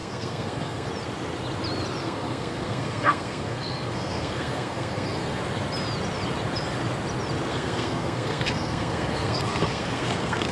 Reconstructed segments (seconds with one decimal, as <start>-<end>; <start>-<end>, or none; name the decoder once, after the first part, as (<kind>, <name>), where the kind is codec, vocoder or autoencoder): 0.0-0.9 (codec, SNAC); 2.0-5.4; 7.5-10.5